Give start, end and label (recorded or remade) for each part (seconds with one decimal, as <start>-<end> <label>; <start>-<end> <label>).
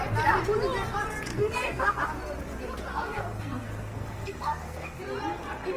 0.0-1.3 recorded; 1.3-2.0 remade; 2.0-2.9 recorded; 2.9-5.0 remade; 5.0-5.8 recorded